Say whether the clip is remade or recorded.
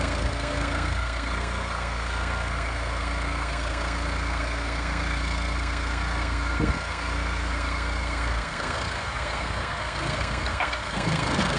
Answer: remade